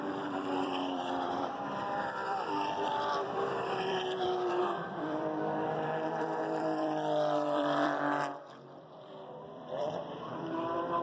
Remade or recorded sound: remade